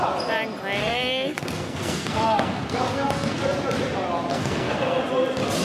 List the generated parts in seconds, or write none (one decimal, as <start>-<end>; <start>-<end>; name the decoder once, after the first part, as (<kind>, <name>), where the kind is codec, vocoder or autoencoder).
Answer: 0.8-3.4 (codec, SNAC); 4.3-5.0